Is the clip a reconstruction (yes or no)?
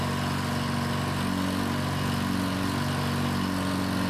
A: no